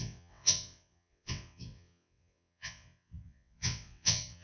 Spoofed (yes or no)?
yes